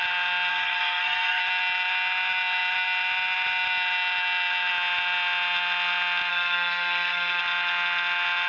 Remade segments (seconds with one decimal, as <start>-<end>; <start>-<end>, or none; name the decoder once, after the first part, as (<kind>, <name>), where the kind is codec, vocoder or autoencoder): 0.5-1.4 (codec, SNAC); 6.3-7.4